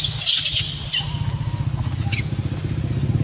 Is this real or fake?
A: real